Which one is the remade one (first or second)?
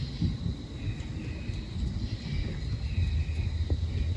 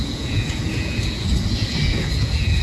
second